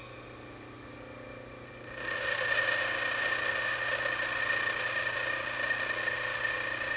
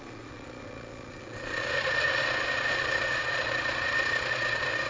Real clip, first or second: first